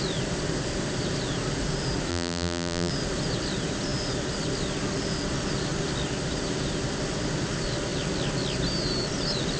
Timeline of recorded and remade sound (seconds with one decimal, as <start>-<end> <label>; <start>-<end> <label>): 0.0-2.1 recorded; 2.1-2.9 remade; 2.9-9.6 recorded